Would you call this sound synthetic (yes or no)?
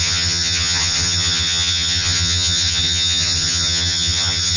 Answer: yes